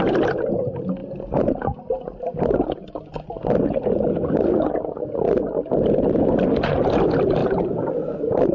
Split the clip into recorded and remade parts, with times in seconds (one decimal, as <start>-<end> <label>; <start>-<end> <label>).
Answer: 0.0-7.4 recorded; 7.4-7.9 remade; 7.9-8.5 recorded